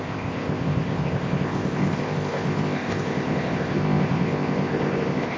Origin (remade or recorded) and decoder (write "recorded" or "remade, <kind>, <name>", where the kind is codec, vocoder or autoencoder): remade, codec, ZipCodec